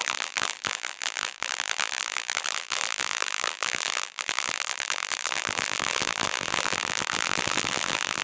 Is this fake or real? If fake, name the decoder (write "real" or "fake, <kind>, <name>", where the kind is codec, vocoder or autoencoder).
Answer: fake, vocoder, BigVGAN v2